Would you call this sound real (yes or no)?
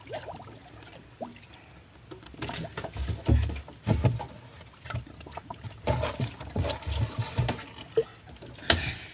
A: yes